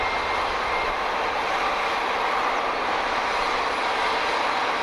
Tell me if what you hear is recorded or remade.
recorded